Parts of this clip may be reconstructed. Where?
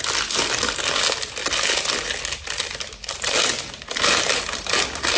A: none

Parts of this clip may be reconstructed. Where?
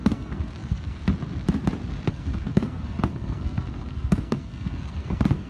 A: 0.0-1.0 (codec, SNAC); 2.1-5.5